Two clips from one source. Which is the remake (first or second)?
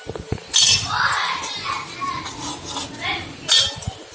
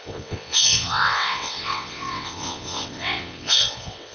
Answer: second